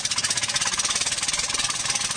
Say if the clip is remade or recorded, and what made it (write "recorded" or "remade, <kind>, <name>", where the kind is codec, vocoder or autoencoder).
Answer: recorded